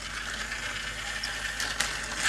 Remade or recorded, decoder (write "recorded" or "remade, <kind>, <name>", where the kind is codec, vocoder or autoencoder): recorded